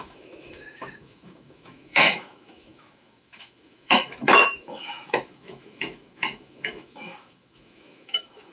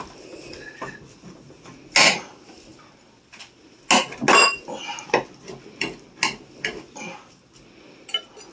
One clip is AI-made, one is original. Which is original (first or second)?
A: second